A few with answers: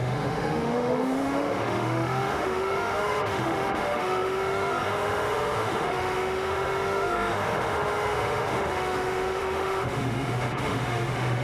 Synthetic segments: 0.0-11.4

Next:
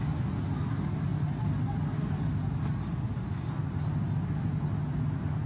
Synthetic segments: none

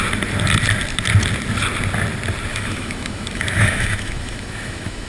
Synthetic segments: 2.5-5.1

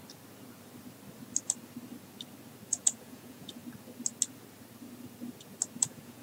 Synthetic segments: 2.7-3.6; 5.8-6.2

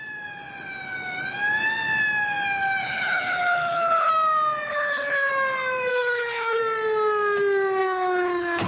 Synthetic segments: 2.8-4.1; 4.7-5.3; 5.9-6.6; 7.8-8.7